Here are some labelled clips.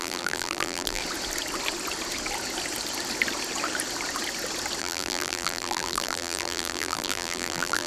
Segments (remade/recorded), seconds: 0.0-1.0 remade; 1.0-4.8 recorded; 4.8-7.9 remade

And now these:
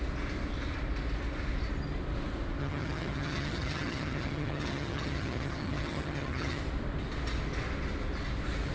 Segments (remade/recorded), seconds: 0.0-2.6 recorded; 2.6-6.6 remade; 6.6-8.7 recorded